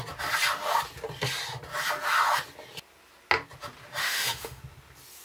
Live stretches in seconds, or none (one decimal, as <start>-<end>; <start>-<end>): 0.0-4.0; 4.6-5.2